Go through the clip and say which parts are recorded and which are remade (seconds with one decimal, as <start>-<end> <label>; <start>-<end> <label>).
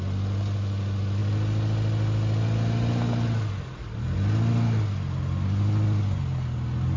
0.0-7.0 recorded